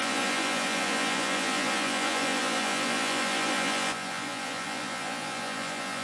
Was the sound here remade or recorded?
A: remade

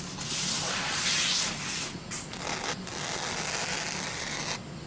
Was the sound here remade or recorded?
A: recorded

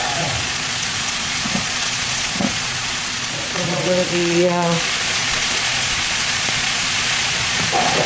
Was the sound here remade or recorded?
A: remade